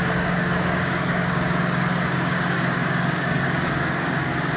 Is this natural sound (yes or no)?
no